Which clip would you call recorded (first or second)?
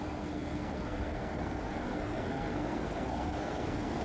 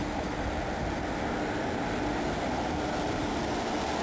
second